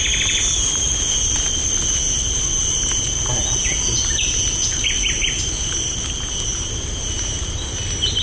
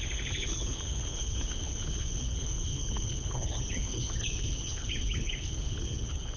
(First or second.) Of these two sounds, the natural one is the first